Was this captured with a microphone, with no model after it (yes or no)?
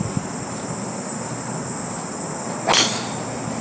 yes